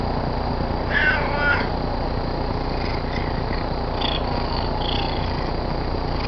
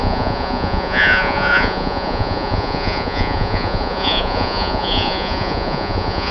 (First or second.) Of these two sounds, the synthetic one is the second